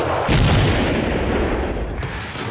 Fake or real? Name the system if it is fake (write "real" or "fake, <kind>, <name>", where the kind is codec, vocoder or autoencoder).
real